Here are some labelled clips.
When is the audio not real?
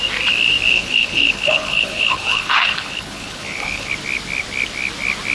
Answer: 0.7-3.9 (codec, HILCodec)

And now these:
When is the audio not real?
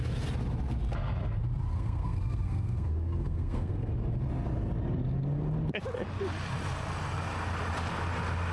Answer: 1.7-3.9 (codec, SNAC)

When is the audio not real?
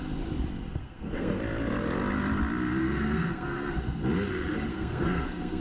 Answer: 0.8-1.4 (codec, SNAC); 2.8-3.8; 4.7-5.6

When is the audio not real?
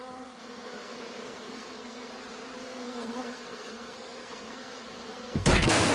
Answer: 0.0-2.1 (codec, SNAC); 2.6-5.9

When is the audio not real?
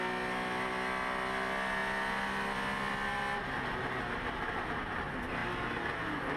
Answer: none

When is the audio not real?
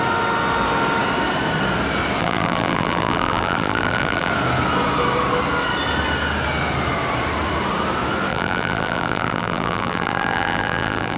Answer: 2.2-4.3 (vocoder, BigVGAN v2); 8.3-11.2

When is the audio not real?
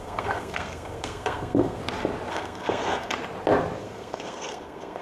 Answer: 0.0-1.8 (codec, SNAC); 2.3-3.1; 3.8-5.0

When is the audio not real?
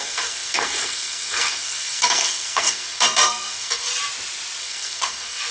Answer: 0.0-3.9 (codec, SNAC); 4.6-5.5